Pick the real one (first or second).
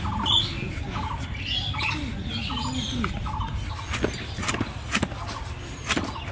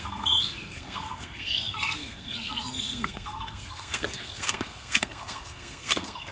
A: first